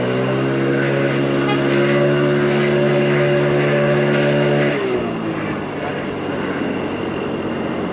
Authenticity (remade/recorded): recorded